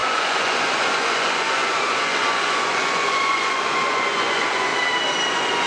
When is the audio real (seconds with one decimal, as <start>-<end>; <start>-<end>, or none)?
4.7-5.3